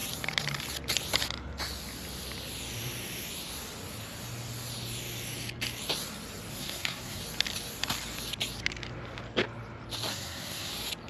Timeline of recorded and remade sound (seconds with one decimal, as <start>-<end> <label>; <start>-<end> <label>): 0.0-6.5 recorded; 6.5-7.2 remade; 7.2-10.1 recorded; 10.1-10.7 remade; 10.7-11.1 recorded